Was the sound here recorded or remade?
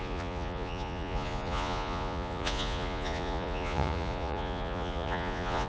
remade